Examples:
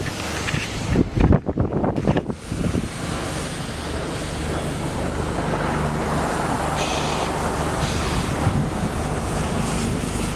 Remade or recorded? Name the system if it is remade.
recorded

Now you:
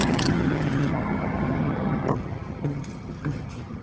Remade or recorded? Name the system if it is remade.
remade, vocoder, HiFi-GAN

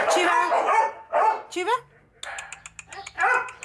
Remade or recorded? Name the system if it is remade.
recorded